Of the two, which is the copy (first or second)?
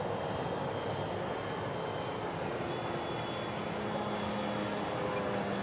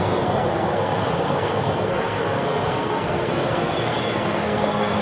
second